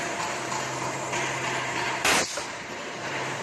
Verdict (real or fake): fake